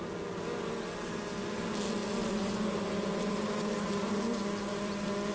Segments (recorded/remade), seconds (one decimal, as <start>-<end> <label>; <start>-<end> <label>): 0.0-5.3 recorded